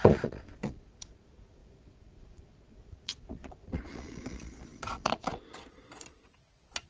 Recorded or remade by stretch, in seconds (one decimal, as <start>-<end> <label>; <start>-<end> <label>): 0.0-6.9 remade